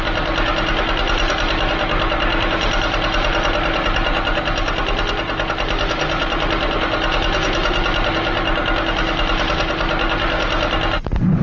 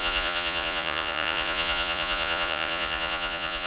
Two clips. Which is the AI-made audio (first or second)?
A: second